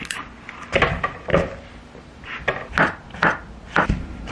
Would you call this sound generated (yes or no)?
no